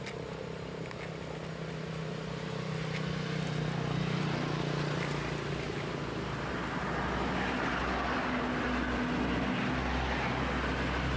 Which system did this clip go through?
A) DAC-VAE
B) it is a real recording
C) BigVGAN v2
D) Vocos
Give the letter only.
B